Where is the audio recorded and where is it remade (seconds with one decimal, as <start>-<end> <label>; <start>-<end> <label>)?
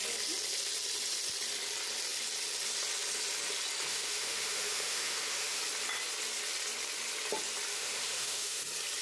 0.0-3.9 recorded; 3.9-5.6 remade; 5.6-7.7 recorded; 7.7-8.6 remade; 8.6-9.0 recorded